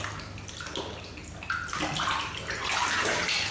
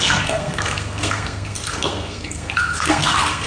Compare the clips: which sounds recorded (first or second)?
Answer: first